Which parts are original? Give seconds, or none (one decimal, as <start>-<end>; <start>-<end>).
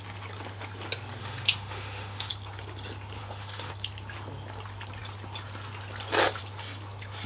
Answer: 0.0-1.2; 2.3-3.2; 3.7-7.3